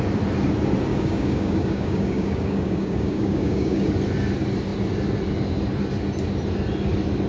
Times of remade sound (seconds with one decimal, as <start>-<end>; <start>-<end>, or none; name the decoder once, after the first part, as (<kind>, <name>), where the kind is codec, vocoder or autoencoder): 0.9-3.9 (codec, DAC)